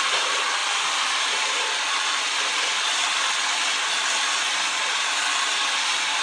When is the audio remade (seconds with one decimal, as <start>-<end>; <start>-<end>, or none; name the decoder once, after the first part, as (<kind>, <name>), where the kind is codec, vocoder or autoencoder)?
0.0-3.0 (vocoder, BigVGAN v2); 5.4-6.2